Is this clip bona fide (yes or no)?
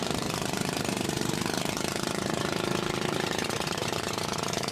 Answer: no